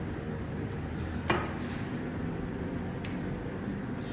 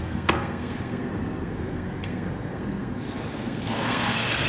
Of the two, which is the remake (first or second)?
second